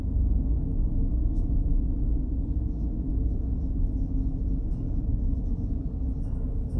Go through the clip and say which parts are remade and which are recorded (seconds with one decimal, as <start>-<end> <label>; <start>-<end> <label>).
0.0-6.8 recorded